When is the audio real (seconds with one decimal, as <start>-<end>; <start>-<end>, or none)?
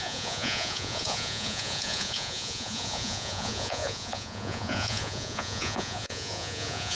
none